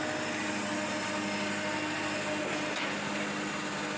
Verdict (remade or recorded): recorded